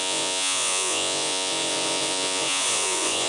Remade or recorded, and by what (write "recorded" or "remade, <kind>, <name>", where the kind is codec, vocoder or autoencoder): remade, vocoder, Vocos